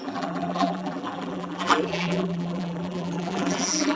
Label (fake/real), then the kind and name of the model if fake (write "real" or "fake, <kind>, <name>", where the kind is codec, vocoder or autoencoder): fake, vocoder, BigVGAN v2